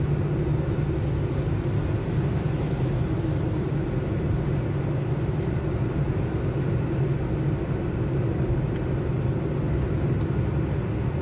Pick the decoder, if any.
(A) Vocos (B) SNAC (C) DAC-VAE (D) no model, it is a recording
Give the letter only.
D